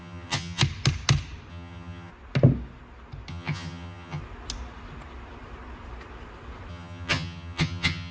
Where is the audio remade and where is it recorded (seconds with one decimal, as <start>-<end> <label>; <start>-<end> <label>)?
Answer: 0.0-0.6 remade; 0.6-1.5 recorded; 1.5-2.1 remade; 2.1-3.3 recorded; 3.3-4.2 remade; 4.2-6.7 recorded; 6.7-8.1 remade